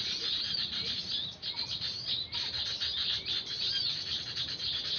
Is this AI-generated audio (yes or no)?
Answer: no